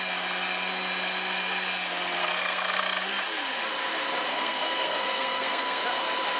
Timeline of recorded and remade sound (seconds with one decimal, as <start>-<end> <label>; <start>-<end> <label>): 0.0-2.2 recorded; 2.2-2.8 remade; 2.8-4.3 recorded; 4.3-5.8 remade; 5.8-6.4 recorded